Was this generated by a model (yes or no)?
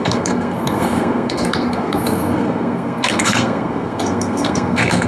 yes